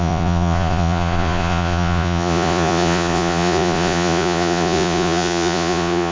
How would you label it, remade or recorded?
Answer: remade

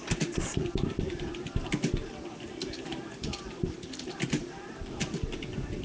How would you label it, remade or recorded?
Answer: recorded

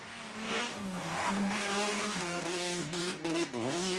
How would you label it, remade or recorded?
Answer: remade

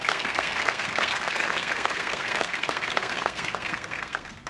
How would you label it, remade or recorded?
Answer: remade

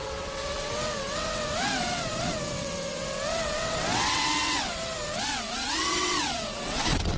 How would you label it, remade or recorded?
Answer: remade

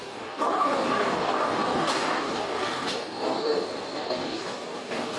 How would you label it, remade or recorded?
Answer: remade